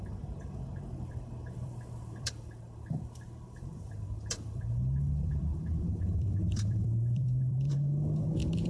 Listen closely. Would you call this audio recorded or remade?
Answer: remade